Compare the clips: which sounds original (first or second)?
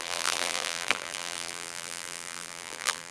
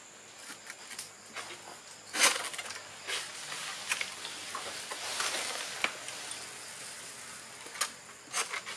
second